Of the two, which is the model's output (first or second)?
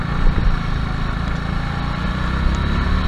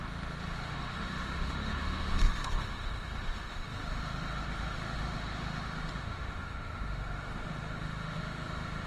second